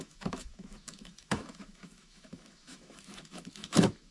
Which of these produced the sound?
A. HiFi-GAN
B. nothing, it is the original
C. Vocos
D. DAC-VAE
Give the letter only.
D